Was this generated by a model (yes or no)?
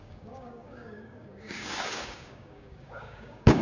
yes